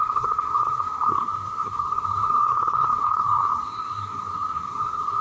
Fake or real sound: fake